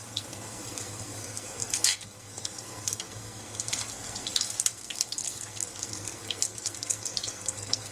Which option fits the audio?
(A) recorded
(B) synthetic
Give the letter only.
B